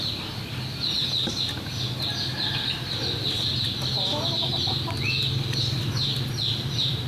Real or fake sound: real